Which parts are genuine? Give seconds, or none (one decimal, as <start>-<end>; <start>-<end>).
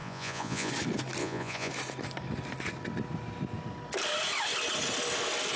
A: 0.7-1.2; 1.7-5.6